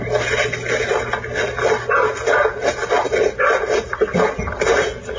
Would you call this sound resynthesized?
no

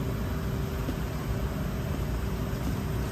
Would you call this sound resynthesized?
no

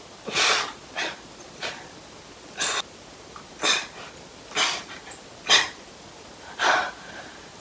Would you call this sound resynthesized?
yes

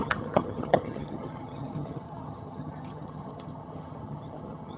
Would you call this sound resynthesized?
yes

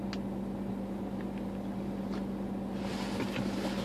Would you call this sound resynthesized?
no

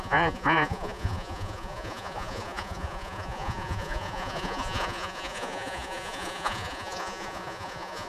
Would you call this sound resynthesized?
yes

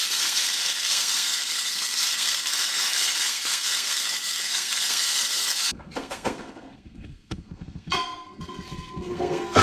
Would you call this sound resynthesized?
yes